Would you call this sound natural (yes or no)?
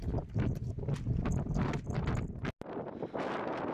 yes